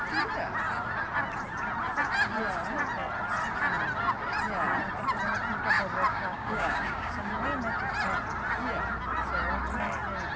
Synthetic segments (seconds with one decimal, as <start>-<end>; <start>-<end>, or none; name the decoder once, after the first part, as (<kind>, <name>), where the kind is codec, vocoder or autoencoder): 6.1-7.3 (codec, DAC)